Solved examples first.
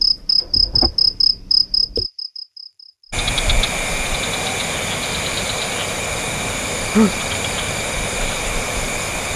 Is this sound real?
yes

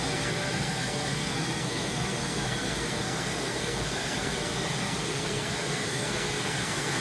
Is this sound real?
no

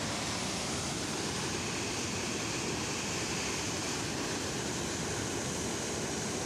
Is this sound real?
yes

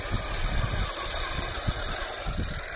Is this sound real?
yes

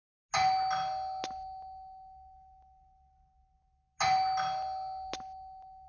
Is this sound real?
yes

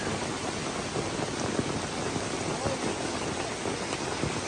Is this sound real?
yes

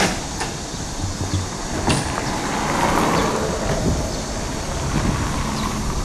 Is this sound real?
yes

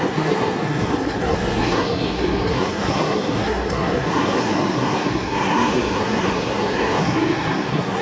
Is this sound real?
no